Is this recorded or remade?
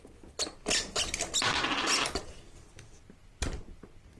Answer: recorded